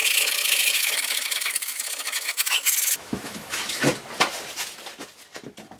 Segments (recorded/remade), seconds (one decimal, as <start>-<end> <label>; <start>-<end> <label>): 0.0-3.9 remade; 3.9-5.8 recorded